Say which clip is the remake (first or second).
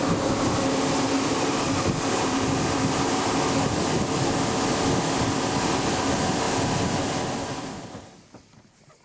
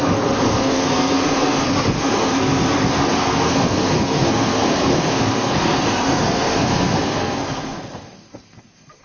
second